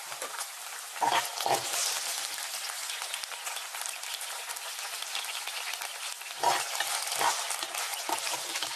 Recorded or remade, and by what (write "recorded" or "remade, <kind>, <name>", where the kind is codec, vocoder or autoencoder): recorded